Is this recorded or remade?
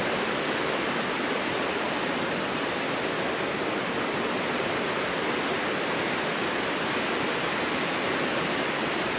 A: recorded